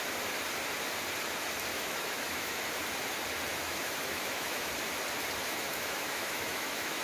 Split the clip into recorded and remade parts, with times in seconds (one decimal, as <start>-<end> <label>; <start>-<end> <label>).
0.0-1.7 recorded; 1.7-2.6 remade; 2.6-3.5 recorded; 3.5-4.7 remade; 4.7-5.4 recorded; 5.4-7.0 remade